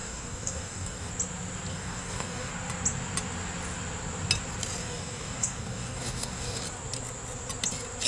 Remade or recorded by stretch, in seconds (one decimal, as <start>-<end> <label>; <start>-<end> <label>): 0.0-1.1 remade; 1.1-1.7 recorded; 1.7-2.5 remade; 2.5-4.8 recorded; 4.8-6.6 remade; 6.6-8.1 recorded